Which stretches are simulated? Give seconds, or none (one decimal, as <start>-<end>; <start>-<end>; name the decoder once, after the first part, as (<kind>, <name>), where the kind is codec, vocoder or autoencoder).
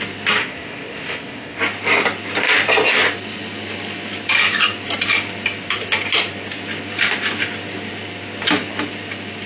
0.4-1.6 (codec, ZipCodec)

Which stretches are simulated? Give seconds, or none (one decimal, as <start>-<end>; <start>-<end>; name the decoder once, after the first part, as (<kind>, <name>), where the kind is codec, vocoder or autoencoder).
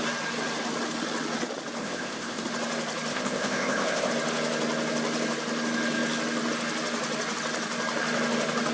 1.8-2.4 (codec, ZipCodec); 3.1-4.1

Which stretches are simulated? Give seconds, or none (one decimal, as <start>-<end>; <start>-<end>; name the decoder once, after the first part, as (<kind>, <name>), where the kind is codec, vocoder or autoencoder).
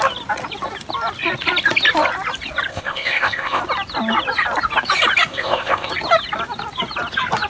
2.7-3.6 (codec, ZipCodec); 5.3-5.9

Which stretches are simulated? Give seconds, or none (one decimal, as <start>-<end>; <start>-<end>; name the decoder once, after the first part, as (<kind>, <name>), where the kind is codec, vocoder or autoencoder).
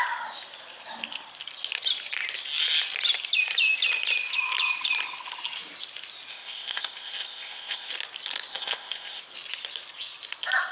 6.3-7.9 (codec, ZipCodec); 8.5-9.2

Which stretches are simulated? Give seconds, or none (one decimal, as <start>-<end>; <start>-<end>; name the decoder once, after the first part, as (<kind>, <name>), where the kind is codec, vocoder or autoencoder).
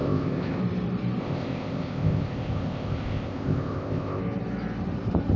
0.0-0.6 (codec, ZipCodec); 1.2-4.2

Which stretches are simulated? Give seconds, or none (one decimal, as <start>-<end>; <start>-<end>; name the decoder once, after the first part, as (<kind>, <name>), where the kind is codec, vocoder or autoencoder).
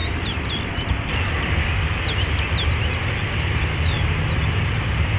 none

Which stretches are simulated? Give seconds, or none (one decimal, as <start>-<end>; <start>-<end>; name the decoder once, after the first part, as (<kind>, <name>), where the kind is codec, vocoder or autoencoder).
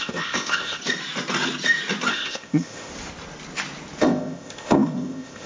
0.0-0.8 (codec, ZipCodec); 2.1-2.9; 4.0-5.5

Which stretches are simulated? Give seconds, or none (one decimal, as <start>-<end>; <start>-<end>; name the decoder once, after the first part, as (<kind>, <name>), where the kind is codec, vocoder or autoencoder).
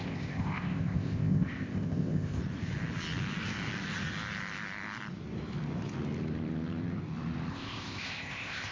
0.0-2.4 (codec, ZipCodec); 7.5-8.7